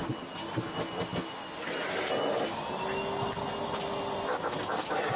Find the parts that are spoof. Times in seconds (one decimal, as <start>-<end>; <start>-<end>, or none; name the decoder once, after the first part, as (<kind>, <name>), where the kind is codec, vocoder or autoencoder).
none